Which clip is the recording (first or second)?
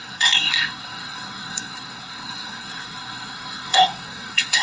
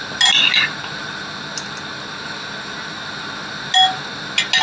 second